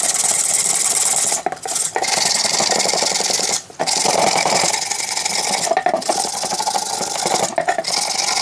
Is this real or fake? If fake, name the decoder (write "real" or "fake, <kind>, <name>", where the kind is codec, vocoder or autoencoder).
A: real